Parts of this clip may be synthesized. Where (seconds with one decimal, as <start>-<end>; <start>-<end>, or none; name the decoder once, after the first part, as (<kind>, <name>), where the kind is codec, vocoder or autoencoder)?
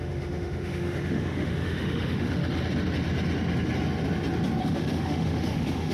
0.0-2.4 (autoencoder, DAC-VAE); 4.6-5.9